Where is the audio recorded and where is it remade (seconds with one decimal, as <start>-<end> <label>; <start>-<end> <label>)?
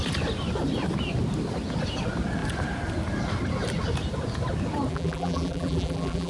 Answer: 0.0-4.9 recorded; 4.9-6.3 remade